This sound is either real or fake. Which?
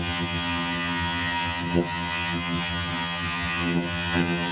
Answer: fake